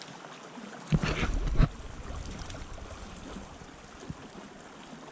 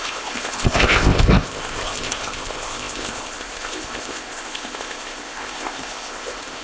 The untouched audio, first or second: first